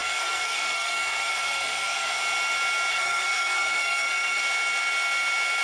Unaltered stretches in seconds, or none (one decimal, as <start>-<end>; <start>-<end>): 2.2-2.9; 4.4-5.6